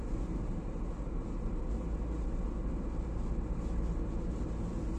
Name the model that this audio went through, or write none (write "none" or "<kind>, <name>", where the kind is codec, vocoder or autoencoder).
none